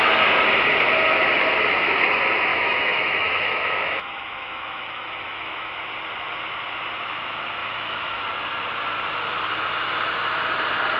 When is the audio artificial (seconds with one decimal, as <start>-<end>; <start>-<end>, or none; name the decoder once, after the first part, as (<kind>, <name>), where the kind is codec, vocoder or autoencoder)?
2.5-5.8 (autoencoder, DAC-VAE); 7.6-8.2